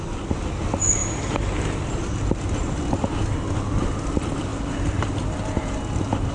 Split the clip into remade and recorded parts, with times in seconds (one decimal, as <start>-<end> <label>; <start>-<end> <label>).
0.0-1.0 recorded; 1.0-1.9 remade; 1.9-4.5 recorded; 4.5-5.8 remade; 5.8-6.3 recorded